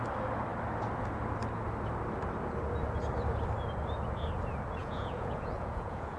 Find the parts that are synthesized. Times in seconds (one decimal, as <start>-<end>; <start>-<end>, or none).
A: 4.8-6.2